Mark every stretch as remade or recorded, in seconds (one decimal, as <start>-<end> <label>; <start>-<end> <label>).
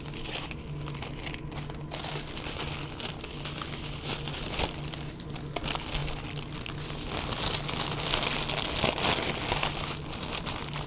0.0-10.9 recorded